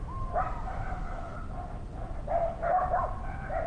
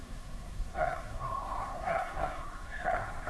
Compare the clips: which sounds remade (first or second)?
second